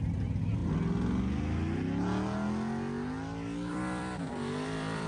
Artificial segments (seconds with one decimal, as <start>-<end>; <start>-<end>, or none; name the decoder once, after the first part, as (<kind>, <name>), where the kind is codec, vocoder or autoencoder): 0.0-0.6 (vocoder, BigVGAN v2); 3.7-5.1